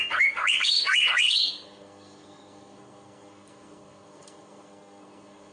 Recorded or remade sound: remade